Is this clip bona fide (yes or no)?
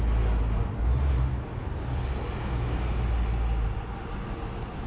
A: yes